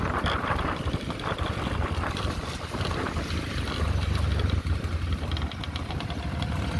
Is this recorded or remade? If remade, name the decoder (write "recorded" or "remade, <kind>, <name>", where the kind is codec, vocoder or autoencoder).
recorded